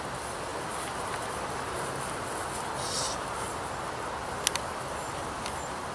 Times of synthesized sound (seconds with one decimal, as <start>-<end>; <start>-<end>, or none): none